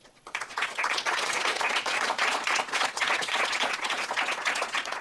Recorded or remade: remade